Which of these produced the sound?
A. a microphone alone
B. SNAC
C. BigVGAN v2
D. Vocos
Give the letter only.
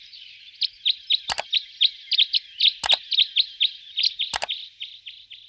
A